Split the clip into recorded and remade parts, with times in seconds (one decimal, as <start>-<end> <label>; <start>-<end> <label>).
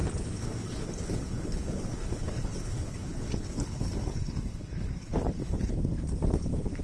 0.0-6.8 remade